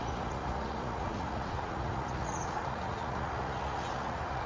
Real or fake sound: fake